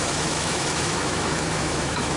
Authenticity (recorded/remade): remade